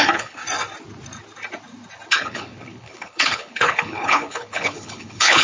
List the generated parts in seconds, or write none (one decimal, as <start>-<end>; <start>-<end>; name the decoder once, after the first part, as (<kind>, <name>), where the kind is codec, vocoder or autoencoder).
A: 0.0-0.4 (codec, HILCodec); 2.1-5.4